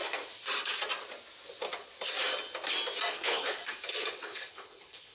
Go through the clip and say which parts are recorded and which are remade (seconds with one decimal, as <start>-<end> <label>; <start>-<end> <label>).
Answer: 0.0-3.1 recorded; 3.1-3.6 remade; 3.6-4.1 recorded; 4.1-5.1 remade